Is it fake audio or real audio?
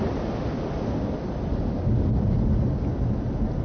real